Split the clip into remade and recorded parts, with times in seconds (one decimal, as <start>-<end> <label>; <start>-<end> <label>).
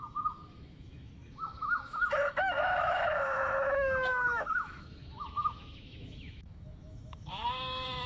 0.0-8.1 remade